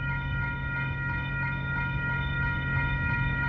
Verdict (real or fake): fake